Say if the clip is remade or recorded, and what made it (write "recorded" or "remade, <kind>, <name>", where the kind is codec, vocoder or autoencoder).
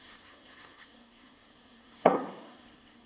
remade, codec, SNAC